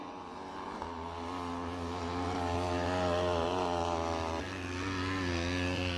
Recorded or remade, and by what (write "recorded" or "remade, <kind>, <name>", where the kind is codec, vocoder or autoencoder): recorded